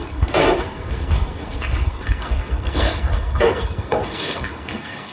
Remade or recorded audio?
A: remade